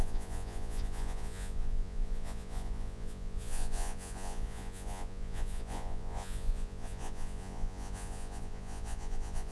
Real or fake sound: fake